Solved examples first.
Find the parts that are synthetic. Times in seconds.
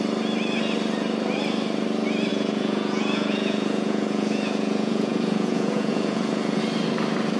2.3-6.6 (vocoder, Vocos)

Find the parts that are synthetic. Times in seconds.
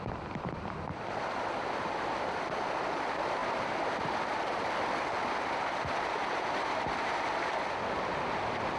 0.0-3.4 (vocoder, BigVGAN v2); 4.2-8.8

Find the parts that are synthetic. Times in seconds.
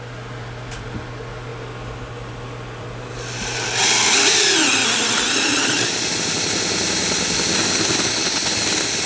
5.5-6.2 (vocoder, Vocos)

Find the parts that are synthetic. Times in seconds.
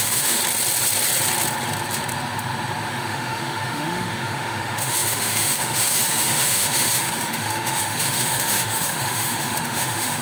0.0-0.4 (autoencoder, DAC-VAE); 2.9-10.2